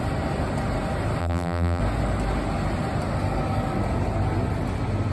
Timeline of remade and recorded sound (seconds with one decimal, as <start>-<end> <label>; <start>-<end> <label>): 0.0-1.2 recorded; 1.2-1.8 remade; 1.8-5.1 recorded